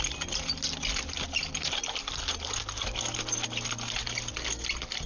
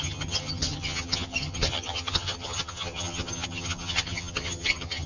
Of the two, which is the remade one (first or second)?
second